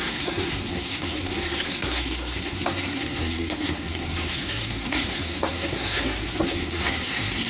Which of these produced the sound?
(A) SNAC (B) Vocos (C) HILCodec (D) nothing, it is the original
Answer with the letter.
A